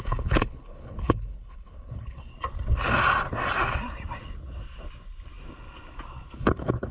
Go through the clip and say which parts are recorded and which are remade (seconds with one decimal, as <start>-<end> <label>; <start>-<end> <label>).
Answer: 0.0-2.3 remade; 2.3-6.4 recorded; 6.4-6.9 remade